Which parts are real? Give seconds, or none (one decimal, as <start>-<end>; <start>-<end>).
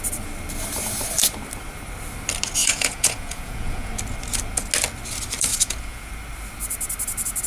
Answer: 0.0-2.6; 3.9-5.5; 6.1-7.5